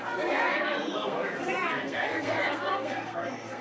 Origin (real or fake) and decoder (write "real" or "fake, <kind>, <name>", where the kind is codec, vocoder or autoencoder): fake, codec, SNAC